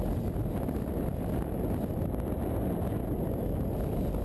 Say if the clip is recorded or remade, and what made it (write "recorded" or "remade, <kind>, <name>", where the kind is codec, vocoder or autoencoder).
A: recorded